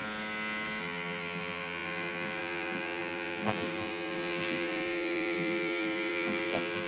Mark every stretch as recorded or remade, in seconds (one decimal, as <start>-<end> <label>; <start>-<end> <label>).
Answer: 0.0-0.8 recorded; 0.8-6.9 remade